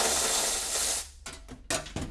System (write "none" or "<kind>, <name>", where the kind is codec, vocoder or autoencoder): none